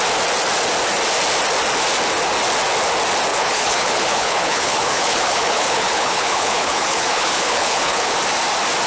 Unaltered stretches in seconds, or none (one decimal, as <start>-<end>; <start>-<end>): 0.0-3.3; 8.2-8.9